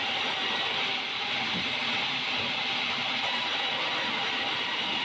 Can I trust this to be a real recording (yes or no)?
no